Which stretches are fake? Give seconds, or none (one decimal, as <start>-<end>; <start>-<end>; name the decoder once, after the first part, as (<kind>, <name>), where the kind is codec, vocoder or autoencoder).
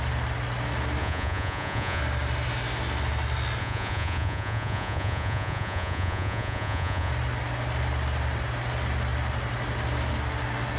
1.0-2.0 (vocoder, Vocos); 3.6-7.1